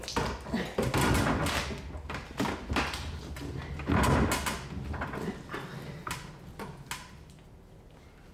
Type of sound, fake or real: real